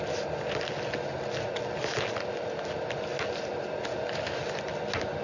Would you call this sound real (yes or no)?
yes